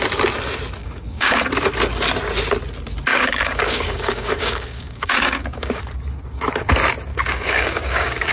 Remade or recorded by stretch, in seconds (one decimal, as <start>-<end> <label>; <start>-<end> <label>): 0.0-0.8 recorded; 0.8-1.4 remade; 1.4-3.1 recorded; 3.1-5.8 remade; 5.8-7.1 recorded; 7.1-8.3 remade